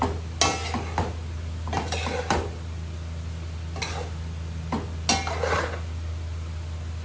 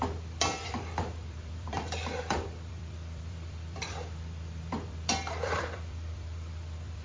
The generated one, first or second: second